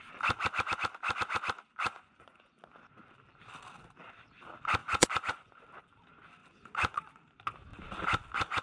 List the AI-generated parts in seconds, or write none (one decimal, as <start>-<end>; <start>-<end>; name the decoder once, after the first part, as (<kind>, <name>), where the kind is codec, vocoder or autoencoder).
1.7-2.6 (vocoder, Vocos); 4.8-5.6; 6.4-7.1